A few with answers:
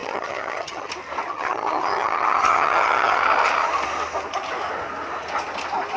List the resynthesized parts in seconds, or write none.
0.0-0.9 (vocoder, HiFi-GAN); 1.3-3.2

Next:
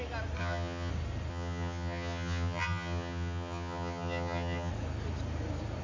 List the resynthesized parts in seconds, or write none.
0.4-0.9 (vocoder, HiFi-GAN); 1.3-4.7